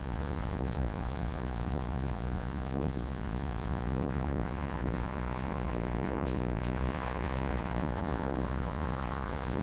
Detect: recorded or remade remade